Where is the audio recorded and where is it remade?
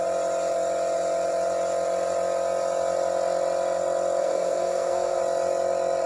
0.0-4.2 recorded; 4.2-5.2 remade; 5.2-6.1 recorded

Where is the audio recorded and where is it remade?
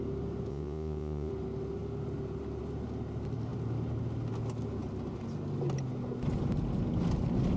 0.0-0.5 recorded; 0.5-1.3 remade; 1.3-7.6 recorded